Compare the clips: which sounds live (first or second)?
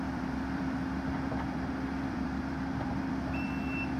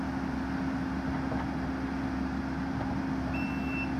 second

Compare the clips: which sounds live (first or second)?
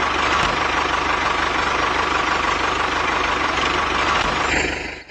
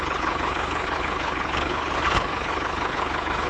first